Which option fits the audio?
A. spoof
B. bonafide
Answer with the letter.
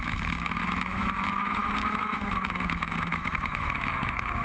A